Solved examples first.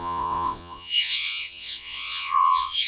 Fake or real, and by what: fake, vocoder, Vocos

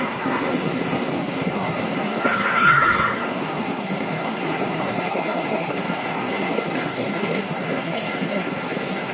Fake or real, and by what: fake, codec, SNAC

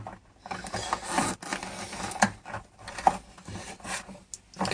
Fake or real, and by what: real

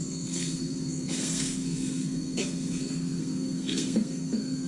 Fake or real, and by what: fake, codec, SNAC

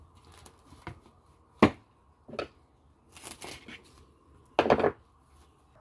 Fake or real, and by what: real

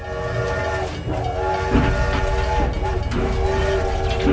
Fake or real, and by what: real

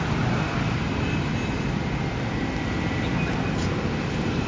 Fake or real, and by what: real